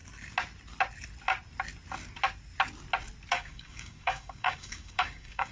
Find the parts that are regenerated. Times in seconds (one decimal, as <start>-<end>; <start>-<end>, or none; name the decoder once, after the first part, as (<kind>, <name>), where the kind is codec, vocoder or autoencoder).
3.3-5.5 (codec, DAC)